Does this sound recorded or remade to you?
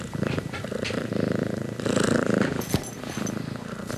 recorded